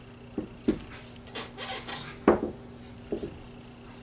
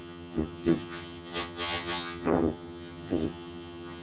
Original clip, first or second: first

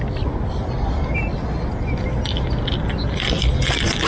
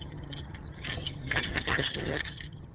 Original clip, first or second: first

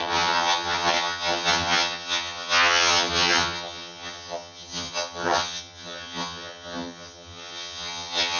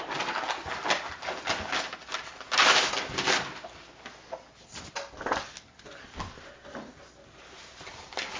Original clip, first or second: second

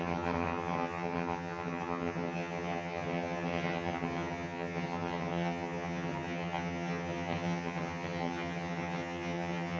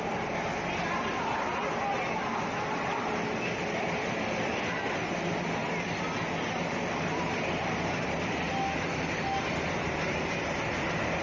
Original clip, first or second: second